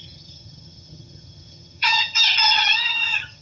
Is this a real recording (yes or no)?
no